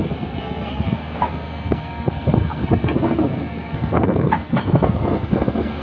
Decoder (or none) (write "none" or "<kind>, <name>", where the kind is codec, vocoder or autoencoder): codec, SNAC